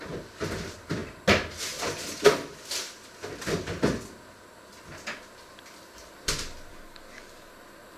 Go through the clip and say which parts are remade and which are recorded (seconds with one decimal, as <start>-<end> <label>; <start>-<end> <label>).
0.0-6.7 recorded; 6.7-7.5 remade; 7.5-8.0 recorded